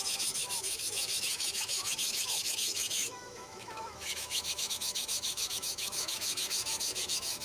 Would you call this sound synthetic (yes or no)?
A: yes